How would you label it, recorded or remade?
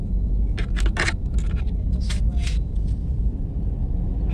recorded